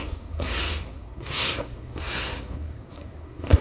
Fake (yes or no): yes